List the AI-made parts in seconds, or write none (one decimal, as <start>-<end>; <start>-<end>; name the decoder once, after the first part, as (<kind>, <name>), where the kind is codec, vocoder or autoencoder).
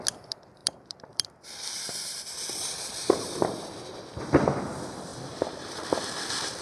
0.6-4.0 (vocoder, BigVGAN v2)